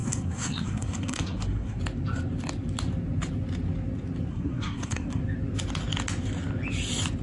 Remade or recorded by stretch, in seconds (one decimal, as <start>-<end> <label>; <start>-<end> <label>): 0.0-1.8 remade; 1.8-4.3 recorded; 4.3-5.2 remade; 5.2-7.2 recorded